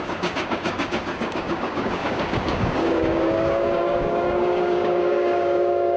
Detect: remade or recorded remade